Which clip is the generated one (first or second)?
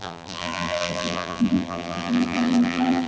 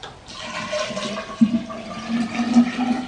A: first